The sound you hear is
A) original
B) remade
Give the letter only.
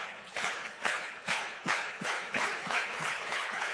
B